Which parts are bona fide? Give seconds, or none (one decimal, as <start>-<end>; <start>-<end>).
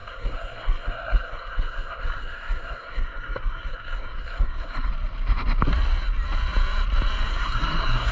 4.9-7.3